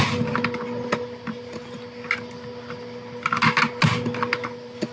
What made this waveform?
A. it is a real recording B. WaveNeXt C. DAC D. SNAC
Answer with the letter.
A